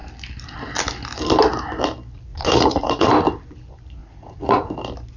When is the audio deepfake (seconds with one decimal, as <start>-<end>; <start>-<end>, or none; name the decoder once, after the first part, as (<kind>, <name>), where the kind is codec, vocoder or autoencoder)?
2.3-3.1 (vocoder, Vocos); 4.0-4.7